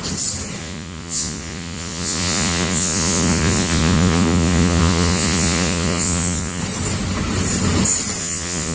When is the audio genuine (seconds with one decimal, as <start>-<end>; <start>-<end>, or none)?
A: 0.0-0.6; 6.6-8.2